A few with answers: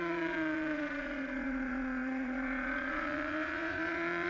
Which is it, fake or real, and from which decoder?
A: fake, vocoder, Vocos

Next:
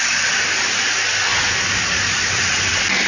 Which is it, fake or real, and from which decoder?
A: fake, vocoder, BigVGAN v2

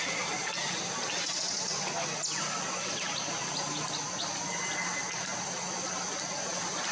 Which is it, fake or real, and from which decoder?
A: real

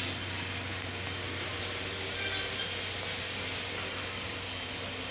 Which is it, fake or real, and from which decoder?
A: real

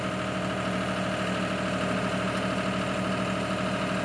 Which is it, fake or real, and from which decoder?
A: real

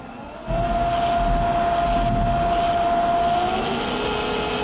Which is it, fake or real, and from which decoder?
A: real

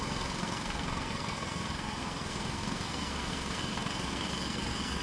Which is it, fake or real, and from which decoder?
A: fake, codec, SNAC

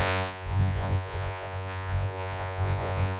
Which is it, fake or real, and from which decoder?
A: fake, vocoder, Vocos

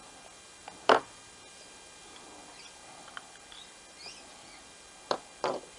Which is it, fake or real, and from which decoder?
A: real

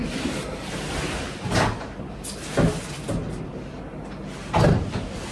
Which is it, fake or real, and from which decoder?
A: real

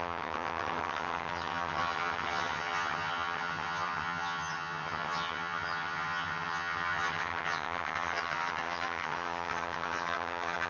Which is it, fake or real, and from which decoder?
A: fake, vocoder, HiFi-GAN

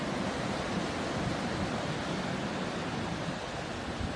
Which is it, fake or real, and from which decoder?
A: real